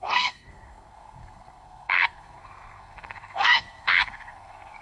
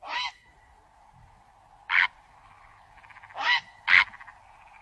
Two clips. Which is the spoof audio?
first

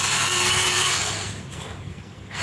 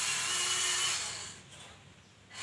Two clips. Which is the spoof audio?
first